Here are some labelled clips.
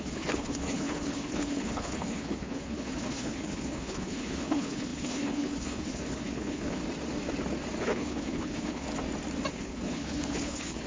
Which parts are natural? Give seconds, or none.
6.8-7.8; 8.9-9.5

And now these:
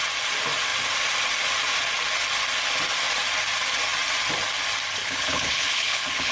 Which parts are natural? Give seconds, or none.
0.0-5.0

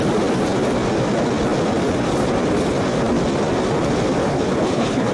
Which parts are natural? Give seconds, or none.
0.0-4.2

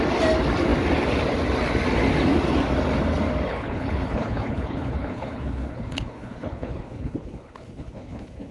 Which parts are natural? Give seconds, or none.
0.0-3.5

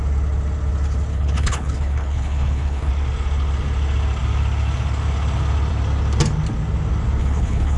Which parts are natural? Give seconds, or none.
0.0-1.1; 2.9-7.2

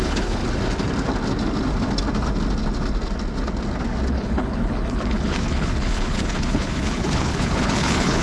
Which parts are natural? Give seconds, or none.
0.4-4.1

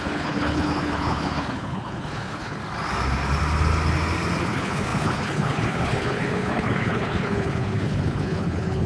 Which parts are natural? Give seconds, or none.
2.6-4.4